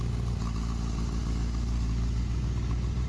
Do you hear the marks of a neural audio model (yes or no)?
no